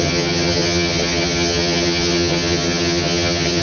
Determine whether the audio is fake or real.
fake